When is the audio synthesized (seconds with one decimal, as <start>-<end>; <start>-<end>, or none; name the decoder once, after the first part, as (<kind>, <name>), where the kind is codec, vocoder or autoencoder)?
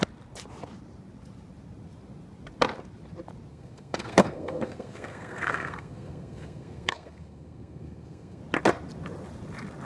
3.5-8.4 (codec, SNAC)